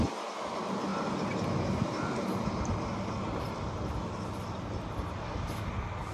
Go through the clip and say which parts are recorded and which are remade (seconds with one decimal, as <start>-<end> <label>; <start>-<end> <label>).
0.0-6.1 recorded